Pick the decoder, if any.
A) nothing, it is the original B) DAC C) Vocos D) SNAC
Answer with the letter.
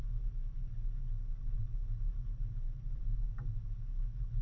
A